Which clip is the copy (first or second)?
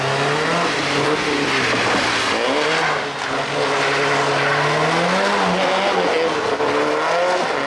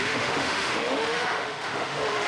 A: second